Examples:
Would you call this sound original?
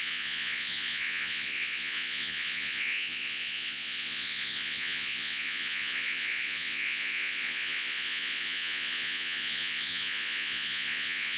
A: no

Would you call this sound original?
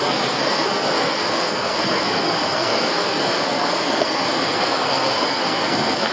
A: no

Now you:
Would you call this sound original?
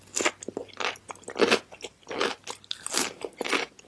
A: yes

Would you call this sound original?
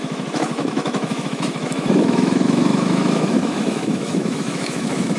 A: no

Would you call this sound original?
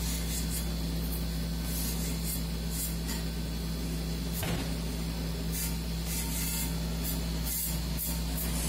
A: yes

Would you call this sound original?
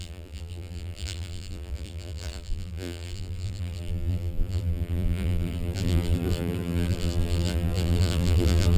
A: no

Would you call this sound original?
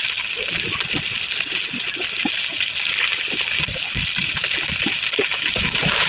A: yes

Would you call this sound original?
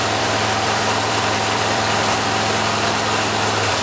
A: no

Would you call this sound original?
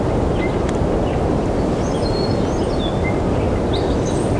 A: yes